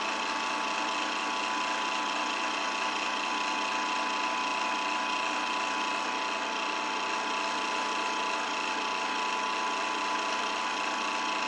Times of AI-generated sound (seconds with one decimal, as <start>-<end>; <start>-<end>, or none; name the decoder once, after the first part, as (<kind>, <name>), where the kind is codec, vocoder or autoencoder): none

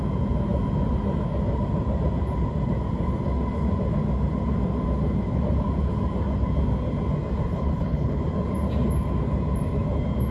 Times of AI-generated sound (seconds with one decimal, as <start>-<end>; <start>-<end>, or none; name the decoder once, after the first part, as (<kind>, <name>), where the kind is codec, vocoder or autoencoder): 7.5-8.2 (codec, HILCodec)

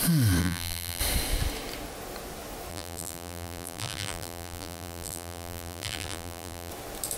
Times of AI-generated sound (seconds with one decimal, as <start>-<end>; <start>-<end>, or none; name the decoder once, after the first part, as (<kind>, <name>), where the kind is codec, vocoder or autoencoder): 0.4-1.0 (vocoder, BigVGAN v2); 2.7-6.7

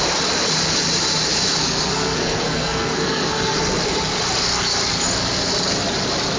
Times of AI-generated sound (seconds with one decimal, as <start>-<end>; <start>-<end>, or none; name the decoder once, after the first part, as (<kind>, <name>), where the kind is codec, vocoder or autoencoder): 1.6-3.6 (codec, SNAC)

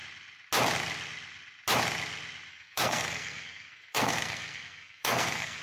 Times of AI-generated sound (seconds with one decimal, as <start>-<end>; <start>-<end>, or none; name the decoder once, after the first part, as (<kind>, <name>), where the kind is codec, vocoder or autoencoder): 2.5-5.6 (codec, SNAC)

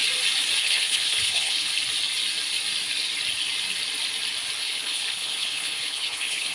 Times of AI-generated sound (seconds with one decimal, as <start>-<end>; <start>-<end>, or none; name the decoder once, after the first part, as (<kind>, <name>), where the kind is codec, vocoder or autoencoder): 0.6-1.7 (codec, HILCodec); 4.6-6.5

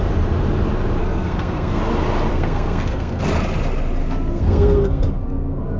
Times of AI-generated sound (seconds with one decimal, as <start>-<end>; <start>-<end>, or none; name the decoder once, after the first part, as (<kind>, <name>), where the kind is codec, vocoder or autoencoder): 1.0-1.8 (codec, SNAC); 2.3-3.2; 4.0-5.8

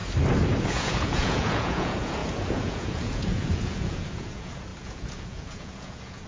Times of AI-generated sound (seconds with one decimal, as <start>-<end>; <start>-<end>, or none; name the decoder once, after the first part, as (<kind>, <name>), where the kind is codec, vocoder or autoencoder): 0.6-6.3 (vocoder, Vocos)